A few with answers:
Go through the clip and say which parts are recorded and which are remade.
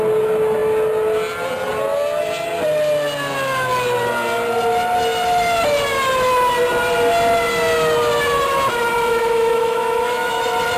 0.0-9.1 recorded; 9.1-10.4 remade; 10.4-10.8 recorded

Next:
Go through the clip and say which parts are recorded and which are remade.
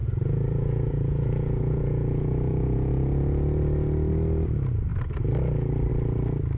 0.0-2.9 remade; 2.9-6.6 recorded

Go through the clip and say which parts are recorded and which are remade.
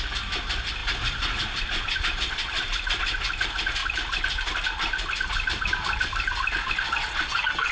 0.0-3.8 recorded; 3.8-6.7 remade; 6.7-7.7 recorded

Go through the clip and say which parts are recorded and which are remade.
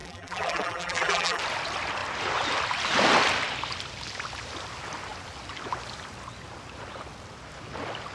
0.0-1.4 remade; 1.4-8.1 recorded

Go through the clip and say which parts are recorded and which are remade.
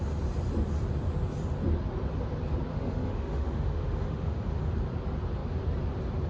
0.0-2.7 recorded; 2.7-4.7 remade; 4.7-6.3 recorded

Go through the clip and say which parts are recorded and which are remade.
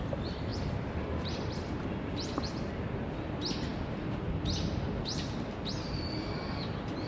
0.0-0.5 recorded; 0.5-2.7 remade; 2.7-7.1 recorded